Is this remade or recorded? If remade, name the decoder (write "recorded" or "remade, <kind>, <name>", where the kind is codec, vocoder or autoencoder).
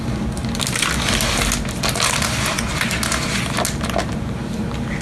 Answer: recorded